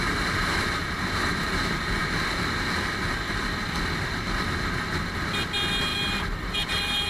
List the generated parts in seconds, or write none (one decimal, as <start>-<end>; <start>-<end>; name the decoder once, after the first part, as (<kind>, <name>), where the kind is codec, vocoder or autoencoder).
0.0-1.4 (vocoder, BigVGAN v2); 5.9-7.1